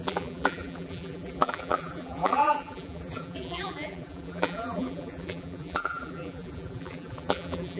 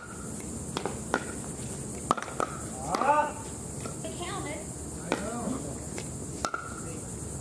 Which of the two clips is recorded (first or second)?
second